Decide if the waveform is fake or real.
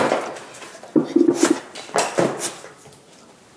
real